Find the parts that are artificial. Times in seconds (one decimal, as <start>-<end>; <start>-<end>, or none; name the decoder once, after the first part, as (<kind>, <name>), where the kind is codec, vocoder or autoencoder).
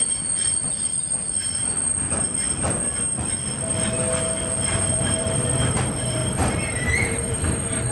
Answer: 0.0-1.8 (vocoder, BigVGAN v2); 4.7-7.9